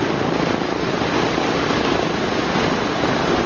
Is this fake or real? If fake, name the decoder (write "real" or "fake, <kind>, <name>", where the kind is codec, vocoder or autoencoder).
real